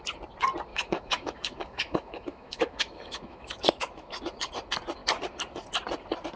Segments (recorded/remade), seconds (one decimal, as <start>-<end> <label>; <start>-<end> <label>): 0.0-0.7 recorded; 0.7-4.2 remade; 4.2-6.4 recorded

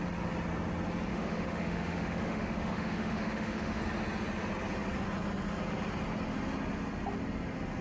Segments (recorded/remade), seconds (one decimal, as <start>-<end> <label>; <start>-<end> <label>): 0.0-1.1 recorded; 1.1-3.8 remade; 3.8-7.8 recorded

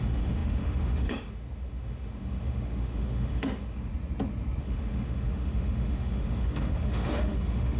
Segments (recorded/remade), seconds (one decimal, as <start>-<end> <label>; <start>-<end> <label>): 0.0-3.9 remade; 3.9-4.6 recorded; 4.6-7.8 remade

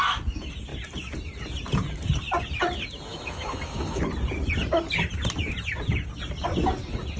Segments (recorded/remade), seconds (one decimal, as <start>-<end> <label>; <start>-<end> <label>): 0.0-3.1 recorded; 3.1-4.0 remade; 4.0-7.2 recorded

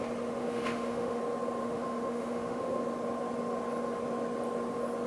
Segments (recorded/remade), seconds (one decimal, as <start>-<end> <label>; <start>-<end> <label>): 0.0-0.4 recorded; 0.4-1.2 remade; 1.2-1.6 recorded; 1.6-2.8 remade; 2.8-5.1 recorded

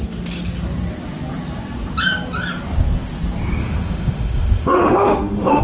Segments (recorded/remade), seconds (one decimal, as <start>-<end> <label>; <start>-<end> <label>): 0.0-3.6 recorded; 3.6-5.6 remade

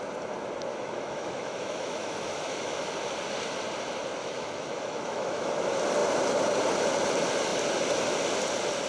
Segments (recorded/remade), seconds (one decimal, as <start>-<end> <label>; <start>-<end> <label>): 0.0-0.7 recorded; 0.7-2.9 remade; 2.9-4.2 recorded; 4.2-5.5 remade; 5.5-8.9 recorded

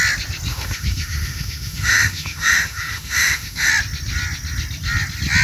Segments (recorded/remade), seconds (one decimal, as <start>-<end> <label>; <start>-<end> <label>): 0.0-0.5 recorded; 0.5-3.7 remade; 3.7-5.4 recorded